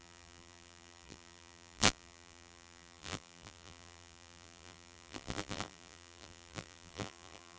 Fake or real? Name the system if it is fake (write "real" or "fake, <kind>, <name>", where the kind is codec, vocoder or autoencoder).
fake, vocoder, BigVGAN v2